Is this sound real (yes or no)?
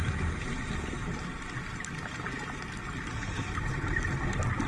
yes